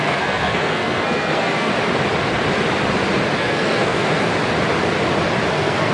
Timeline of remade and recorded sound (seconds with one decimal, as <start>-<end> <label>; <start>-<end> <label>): 0.0-1.7 remade; 1.7-3.4 recorded; 3.4-4.3 remade; 4.3-5.5 recorded; 5.5-5.9 remade